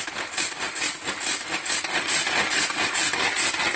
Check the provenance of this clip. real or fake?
real